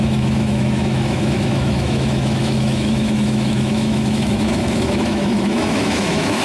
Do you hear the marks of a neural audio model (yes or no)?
yes